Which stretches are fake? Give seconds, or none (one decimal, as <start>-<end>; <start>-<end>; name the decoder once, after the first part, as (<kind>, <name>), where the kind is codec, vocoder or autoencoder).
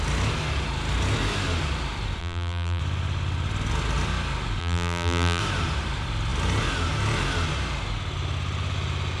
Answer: 2.2-2.8 (vocoder, BigVGAN v2); 4.6-5.4